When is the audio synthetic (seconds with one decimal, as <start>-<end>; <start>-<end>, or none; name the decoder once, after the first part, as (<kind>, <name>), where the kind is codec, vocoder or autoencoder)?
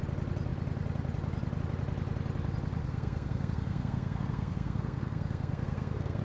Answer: 2.8-6.2 (codec, SNAC)